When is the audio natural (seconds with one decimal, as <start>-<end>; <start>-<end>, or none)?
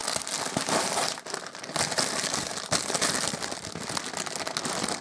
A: 0.0-5.0